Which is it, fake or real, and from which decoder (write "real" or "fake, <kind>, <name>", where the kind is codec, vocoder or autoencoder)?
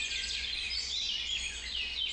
fake, vocoder, Vocos